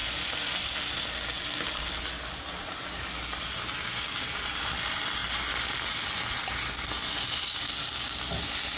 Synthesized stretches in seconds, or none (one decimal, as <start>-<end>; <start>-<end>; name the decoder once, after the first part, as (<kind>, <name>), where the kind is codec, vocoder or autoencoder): none